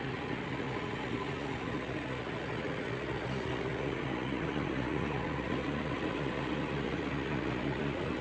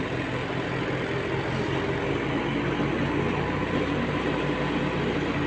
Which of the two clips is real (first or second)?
second